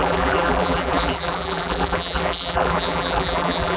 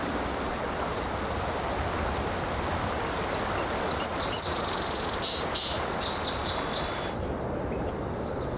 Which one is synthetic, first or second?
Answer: first